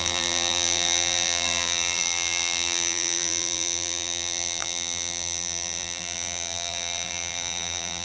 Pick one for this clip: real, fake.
fake